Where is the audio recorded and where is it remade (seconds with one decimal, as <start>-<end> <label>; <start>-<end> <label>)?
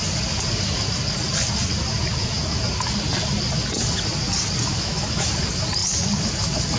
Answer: 0.0-4.7 recorded; 4.7-5.3 remade; 5.3-6.8 recorded